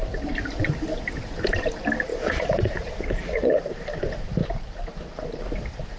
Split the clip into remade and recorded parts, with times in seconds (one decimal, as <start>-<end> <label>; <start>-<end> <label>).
0.0-2.1 recorded; 2.1-3.6 remade; 3.6-6.0 recorded